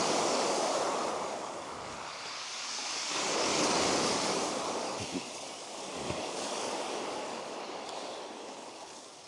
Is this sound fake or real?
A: fake